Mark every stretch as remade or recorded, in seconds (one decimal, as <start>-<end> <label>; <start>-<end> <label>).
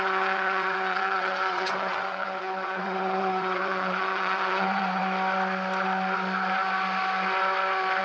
0.0-5.0 remade; 5.0-8.0 recorded